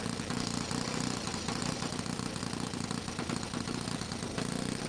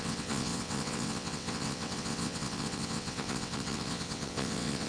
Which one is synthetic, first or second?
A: second